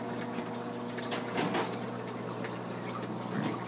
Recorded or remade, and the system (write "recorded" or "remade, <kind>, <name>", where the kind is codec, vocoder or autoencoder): recorded